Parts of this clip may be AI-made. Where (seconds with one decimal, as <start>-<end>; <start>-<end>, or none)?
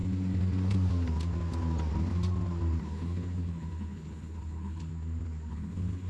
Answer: 2.8-4.9; 5.5-6.1